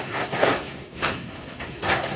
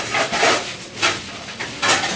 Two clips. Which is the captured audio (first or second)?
second